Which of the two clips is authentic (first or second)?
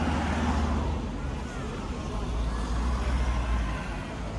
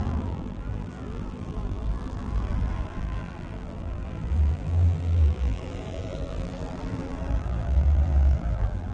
first